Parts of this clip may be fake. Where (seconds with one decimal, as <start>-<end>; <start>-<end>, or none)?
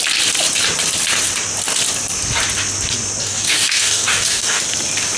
3.2-4.6